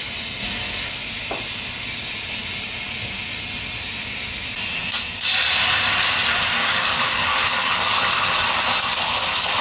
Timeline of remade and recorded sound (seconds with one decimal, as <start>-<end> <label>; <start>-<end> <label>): 0.0-6.6 recorded; 6.6-8.0 remade; 8.0-9.6 recorded

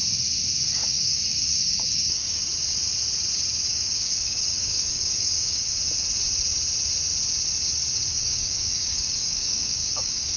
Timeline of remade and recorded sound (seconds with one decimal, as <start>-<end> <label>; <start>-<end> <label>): 0.0-0.8 recorded; 0.8-2.4 remade; 2.4-3.7 recorded; 3.7-5.8 remade; 5.8-8.1 recorded; 8.1-10.4 remade

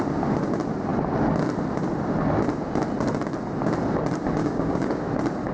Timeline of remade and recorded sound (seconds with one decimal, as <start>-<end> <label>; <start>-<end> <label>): 0.0-4.4 recorded; 4.4-5.0 remade; 5.0-5.5 recorded

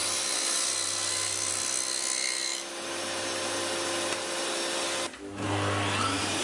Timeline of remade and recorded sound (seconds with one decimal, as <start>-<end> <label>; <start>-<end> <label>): 0.0-6.4 recorded

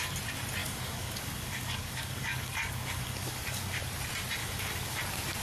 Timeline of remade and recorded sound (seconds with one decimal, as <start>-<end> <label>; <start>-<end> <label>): 0.0-0.6 recorded; 0.6-3.8 remade; 3.8-4.4 recorded; 4.4-5.0 remade; 5.0-5.4 recorded

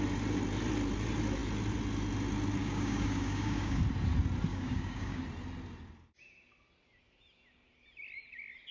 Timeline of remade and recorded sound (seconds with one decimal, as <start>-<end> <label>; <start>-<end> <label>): 0.0-2.6 recorded; 2.6-3.8 remade; 3.8-4.5 recorded; 4.5-5.2 remade; 5.2-8.7 recorded

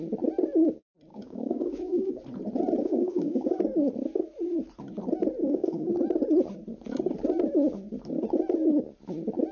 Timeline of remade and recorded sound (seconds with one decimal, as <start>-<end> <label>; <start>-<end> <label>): 0.0-1.1 recorded; 1.1-2.1 remade; 2.1-2.8 recorded; 2.8-3.6 remade; 3.6-5.4 recorded; 5.4-5.9 remade; 5.9-9.5 recorded

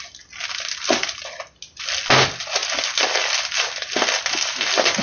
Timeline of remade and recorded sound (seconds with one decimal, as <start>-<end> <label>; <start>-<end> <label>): 0.0-5.0 recorded